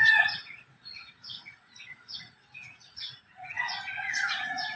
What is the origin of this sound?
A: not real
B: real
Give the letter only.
A